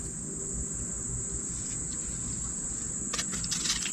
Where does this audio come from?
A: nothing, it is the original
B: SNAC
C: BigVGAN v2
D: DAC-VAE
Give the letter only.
A